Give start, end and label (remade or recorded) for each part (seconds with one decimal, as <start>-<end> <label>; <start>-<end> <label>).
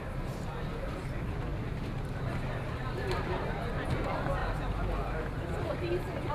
0.0-6.3 recorded